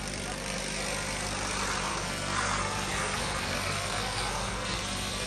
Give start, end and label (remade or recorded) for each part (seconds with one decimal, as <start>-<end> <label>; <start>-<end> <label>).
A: 0.0-1.9 recorded; 1.9-5.3 remade